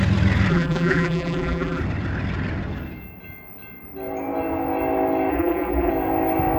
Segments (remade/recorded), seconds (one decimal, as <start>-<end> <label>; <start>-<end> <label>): 0.0-0.5 recorded; 0.5-1.8 remade; 1.8-5.3 recorded; 5.3-5.9 remade; 5.9-6.6 recorded

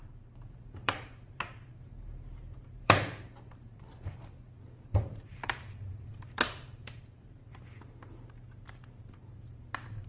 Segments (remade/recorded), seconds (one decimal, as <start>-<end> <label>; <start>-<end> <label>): 0.0-7.4 remade; 7.4-9.0 recorded; 9.0-10.1 remade